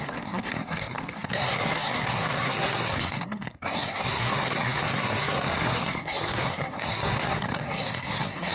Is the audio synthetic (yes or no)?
yes